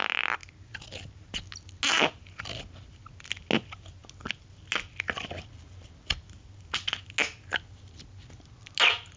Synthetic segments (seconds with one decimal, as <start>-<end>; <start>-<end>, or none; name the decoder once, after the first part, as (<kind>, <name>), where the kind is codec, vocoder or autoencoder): none